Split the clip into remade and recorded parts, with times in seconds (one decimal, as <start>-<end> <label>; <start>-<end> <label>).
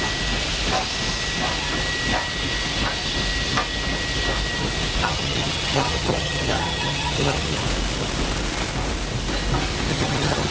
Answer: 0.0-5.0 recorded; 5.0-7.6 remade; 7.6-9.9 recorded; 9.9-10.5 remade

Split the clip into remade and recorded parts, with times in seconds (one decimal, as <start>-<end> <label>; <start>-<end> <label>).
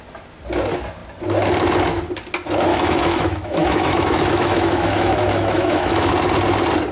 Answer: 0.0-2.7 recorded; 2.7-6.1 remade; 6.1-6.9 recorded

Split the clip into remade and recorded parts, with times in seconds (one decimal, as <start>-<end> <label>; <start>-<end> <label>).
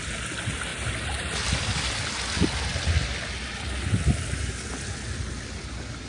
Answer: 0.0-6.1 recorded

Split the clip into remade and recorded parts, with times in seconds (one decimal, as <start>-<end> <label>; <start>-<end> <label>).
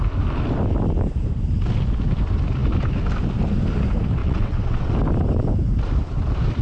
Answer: 0.0-4.2 recorded; 4.2-4.9 remade; 4.9-6.6 recorded